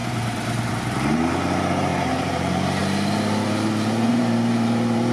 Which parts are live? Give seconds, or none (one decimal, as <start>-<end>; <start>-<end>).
2.8-4.1